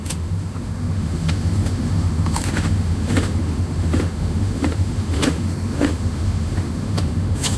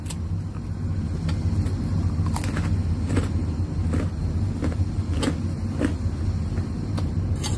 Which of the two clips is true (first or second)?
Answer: second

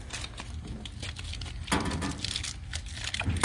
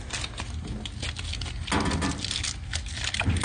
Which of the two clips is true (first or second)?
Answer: second